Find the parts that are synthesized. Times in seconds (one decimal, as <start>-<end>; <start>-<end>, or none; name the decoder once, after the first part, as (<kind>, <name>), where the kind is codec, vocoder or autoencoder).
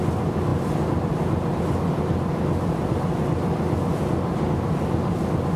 none